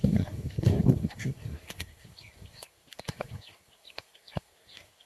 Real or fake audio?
fake